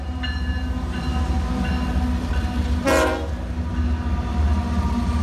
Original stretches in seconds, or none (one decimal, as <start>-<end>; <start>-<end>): 0.0-5.2